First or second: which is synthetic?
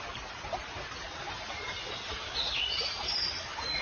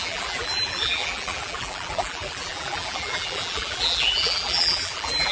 second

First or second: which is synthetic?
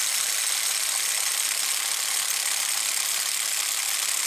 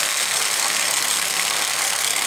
second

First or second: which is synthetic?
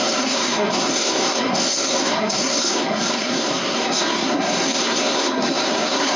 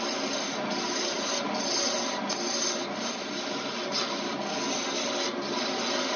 first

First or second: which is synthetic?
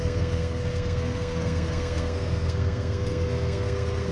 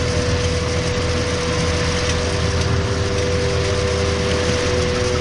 first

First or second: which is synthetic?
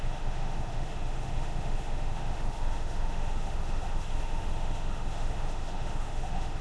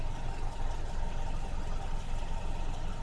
first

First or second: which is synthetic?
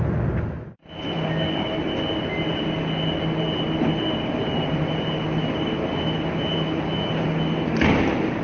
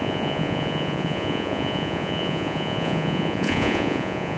second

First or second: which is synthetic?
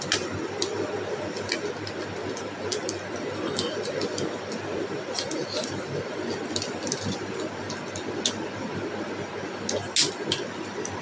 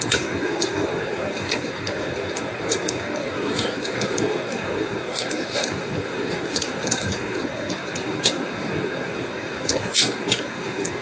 second